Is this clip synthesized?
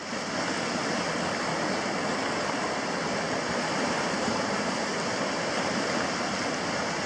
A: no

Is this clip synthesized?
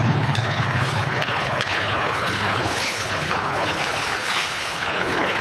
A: yes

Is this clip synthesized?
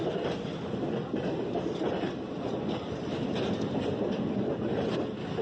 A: no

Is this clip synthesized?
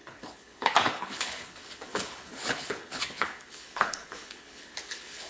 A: yes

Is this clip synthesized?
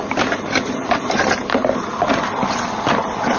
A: no